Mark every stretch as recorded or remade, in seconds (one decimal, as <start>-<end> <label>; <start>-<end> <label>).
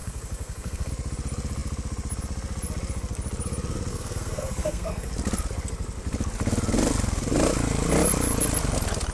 0.0-0.9 remade; 0.9-3.9 recorded; 3.9-5.1 remade; 5.1-9.1 recorded